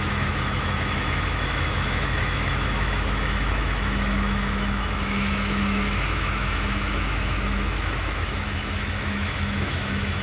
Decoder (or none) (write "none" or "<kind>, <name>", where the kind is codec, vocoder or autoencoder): autoencoder, DAC-VAE